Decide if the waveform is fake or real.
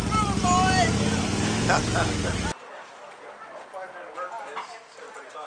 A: real